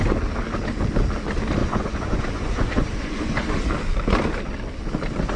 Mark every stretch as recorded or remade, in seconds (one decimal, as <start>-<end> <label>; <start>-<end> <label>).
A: 0.0-1.6 recorded; 1.6-3.4 remade; 3.4-5.4 recorded